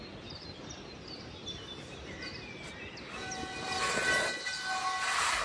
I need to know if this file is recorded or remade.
recorded